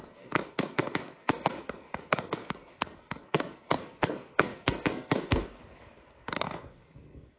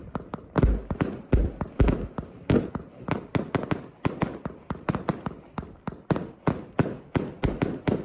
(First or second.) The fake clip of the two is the first